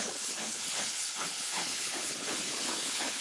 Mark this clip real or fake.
fake